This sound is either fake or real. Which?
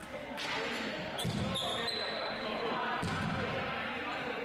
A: real